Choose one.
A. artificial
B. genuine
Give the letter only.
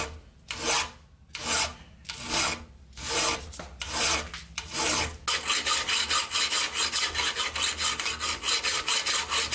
B